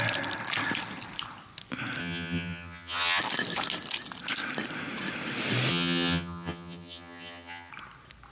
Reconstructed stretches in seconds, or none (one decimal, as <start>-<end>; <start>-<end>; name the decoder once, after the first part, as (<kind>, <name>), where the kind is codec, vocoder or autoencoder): 2.0-3.2 (vocoder, HiFi-GAN); 5.7-7.7